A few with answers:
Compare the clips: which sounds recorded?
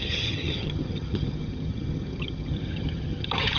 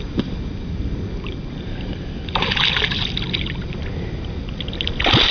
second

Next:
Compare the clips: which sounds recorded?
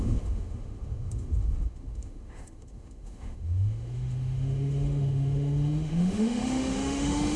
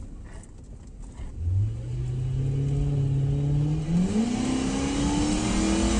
second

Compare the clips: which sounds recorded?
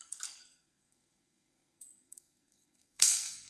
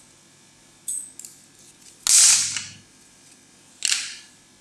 second